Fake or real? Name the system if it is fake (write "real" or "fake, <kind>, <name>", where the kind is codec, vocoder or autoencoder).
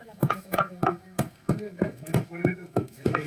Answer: fake, codec, SNAC